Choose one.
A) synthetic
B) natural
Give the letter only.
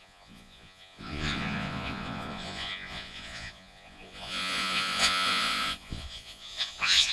A